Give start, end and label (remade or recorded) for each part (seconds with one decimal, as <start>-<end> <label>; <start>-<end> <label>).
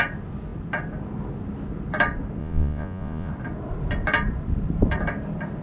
0.0-2.4 recorded; 2.4-3.3 remade; 3.3-5.6 recorded